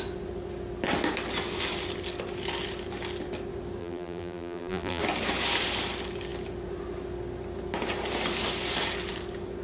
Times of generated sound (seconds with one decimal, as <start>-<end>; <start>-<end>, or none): 3.8-5.0